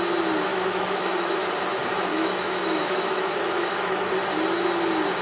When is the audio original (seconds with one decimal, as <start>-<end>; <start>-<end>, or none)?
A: 0.0-0.5; 1.3-2.1; 4.1-5.2